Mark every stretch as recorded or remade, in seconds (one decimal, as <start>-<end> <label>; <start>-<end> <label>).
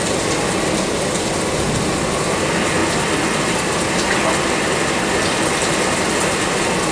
0.0-6.9 recorded